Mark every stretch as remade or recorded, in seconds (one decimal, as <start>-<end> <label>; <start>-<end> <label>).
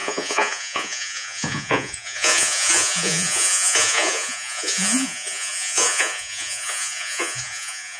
0.0-8.0 remade